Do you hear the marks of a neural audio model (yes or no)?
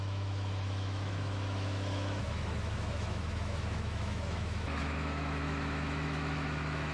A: yes